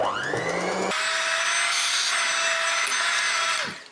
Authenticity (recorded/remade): recorded